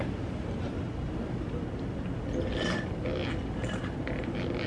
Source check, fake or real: real